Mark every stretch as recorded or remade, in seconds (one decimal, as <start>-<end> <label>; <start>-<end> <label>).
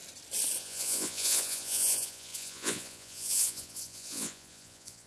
0.0-0.6 recorded; 0.6-5.1 remade